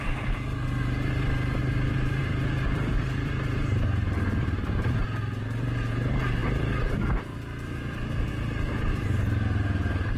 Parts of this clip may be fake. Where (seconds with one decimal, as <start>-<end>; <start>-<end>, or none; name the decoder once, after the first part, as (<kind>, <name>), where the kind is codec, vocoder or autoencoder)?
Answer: 1.6-5.0 (vocoder, BigVGAN v2); 6.4-8.3